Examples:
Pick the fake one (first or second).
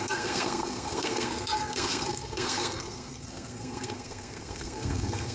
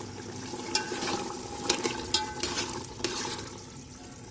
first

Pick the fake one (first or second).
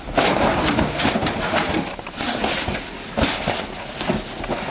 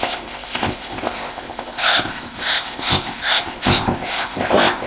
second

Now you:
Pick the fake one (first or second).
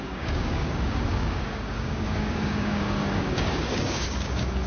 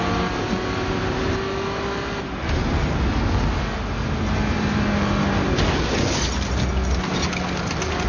first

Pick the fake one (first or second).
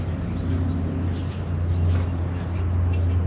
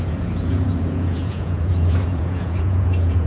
second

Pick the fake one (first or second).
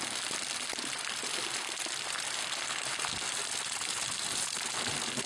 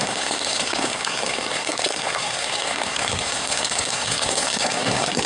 second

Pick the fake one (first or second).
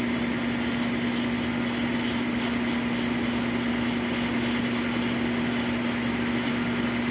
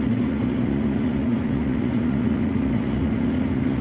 second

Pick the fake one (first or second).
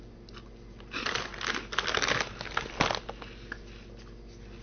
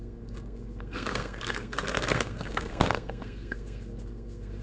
second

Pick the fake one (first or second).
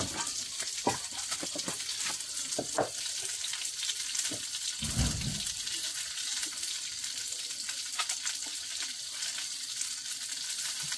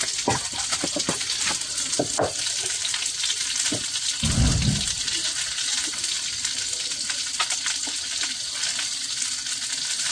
first